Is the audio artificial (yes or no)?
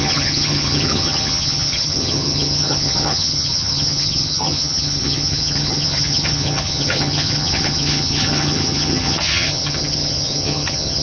yes